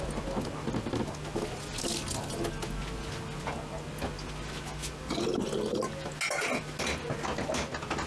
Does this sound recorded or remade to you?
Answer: recorded